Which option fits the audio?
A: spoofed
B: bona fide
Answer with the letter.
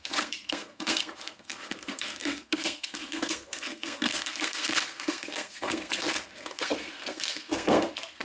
A